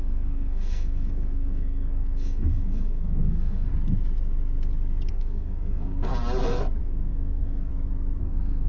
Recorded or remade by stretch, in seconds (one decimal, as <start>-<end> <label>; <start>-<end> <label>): 0.0-3.7 remade; 3.7-5.1 recorded; 5.1-6.1 remade; 6.1-6.8 recorded; 6.8-7.7 remade; 7.7-8.2 recorded; 8.2-8.7 remade